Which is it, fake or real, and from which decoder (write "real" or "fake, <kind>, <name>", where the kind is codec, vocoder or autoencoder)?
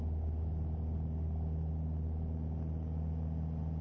real